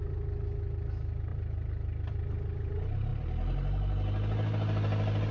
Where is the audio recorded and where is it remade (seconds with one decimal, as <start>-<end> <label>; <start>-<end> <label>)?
0.0-5.3 recorded